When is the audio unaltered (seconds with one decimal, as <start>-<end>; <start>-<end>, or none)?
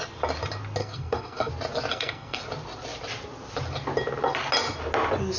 0.0-0.8; 1.5-1.9; 2.4-5.4